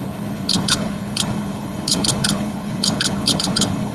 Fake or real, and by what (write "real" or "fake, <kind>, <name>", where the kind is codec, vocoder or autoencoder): fake, codec, HILCodec